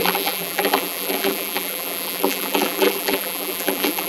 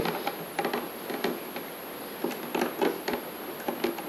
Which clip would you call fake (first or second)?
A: first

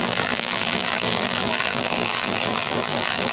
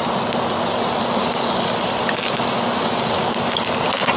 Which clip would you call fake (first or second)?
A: first